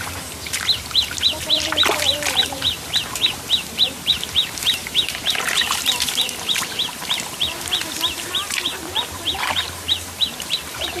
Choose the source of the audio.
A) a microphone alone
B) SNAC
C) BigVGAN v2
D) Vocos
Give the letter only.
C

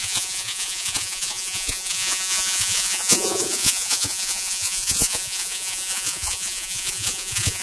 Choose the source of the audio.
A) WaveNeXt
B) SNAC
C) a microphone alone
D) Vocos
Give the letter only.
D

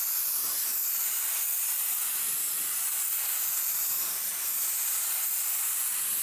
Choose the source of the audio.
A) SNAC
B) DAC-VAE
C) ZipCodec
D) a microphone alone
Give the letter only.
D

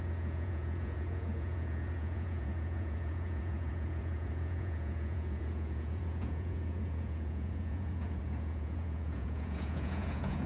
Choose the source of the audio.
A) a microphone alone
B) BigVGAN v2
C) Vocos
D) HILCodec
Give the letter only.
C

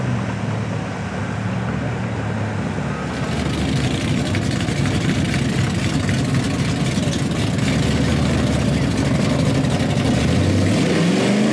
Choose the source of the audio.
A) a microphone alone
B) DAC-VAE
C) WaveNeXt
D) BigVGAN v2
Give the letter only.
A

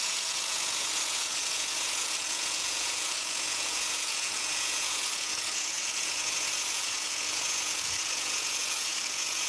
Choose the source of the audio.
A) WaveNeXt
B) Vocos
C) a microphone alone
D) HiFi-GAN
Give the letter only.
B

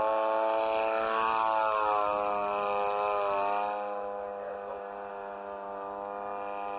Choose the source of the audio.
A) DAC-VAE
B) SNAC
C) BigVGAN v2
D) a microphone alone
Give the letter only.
D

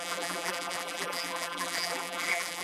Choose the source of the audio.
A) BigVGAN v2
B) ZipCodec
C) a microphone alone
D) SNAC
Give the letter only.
A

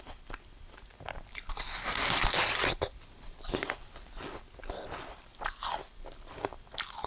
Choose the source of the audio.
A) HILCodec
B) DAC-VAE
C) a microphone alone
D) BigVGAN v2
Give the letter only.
C